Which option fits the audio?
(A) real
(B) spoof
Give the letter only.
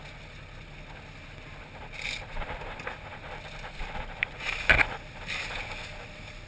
A